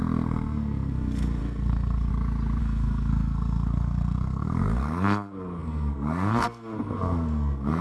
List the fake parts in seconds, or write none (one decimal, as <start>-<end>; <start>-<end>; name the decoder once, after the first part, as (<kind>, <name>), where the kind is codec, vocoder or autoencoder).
0.0-2.1 (codec, SNAC); 2.6-7.8